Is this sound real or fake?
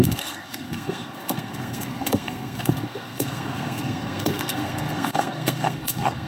fake